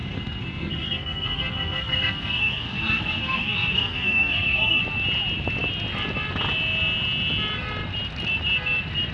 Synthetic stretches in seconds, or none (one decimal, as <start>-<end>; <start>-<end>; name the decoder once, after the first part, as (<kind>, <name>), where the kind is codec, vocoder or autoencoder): 0.0-4.8 (codec, SNAC)